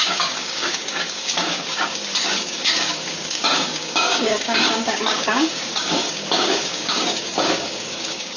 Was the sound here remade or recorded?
remade